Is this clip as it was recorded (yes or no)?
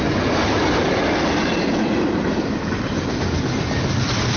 yes